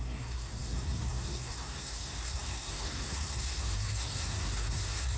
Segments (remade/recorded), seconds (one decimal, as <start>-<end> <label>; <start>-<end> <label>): 0.0-5.2 remade